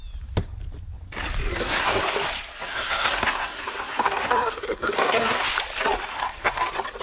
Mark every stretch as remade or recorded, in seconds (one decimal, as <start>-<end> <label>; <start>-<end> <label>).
0.0-1.5 recorded; 1.5-2.0 remade; 2.0-2.7 recorded; 2.7-5.5 remade; 5.5-6.1 recorded; 6.1-6.6 remade; 6.6-7.0 recorded